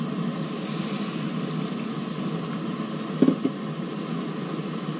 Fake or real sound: real